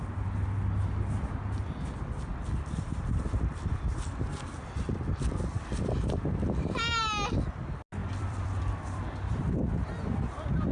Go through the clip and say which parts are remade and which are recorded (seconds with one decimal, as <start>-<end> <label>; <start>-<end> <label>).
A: 0.0-2.3 recorded; 2.3-6.8 remade; 6.8-8.0 recorded; 8.0-9.3 remade; 9.3-10.7 recorded